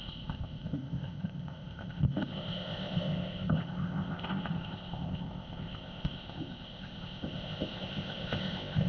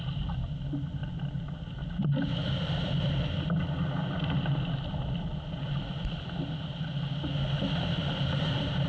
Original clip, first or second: second